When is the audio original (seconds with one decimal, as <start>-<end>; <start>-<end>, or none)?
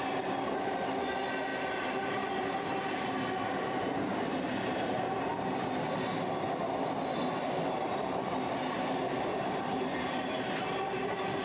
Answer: 0.0-11.4